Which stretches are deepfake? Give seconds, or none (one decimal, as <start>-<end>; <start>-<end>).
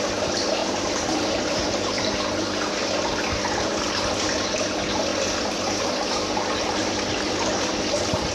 0.6-2.1; 5.1-5.8